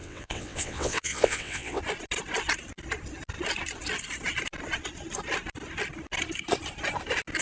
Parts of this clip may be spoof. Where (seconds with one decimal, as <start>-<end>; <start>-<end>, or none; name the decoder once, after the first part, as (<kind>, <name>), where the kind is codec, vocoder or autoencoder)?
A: 0.0-1.8 (vocoder, WaveNeXt)